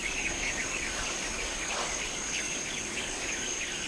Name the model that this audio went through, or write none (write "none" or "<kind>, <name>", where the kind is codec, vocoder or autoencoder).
codec, DAC